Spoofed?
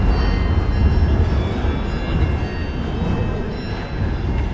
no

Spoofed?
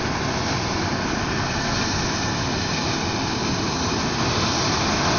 no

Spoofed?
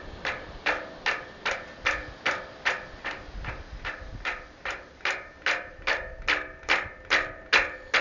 no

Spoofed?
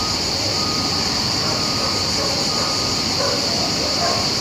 yes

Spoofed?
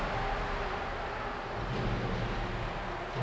no